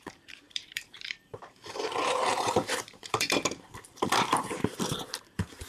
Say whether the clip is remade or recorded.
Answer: remade